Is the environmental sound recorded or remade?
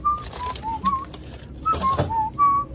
recorded